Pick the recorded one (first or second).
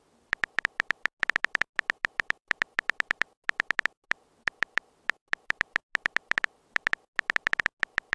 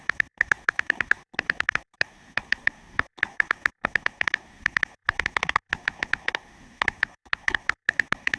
first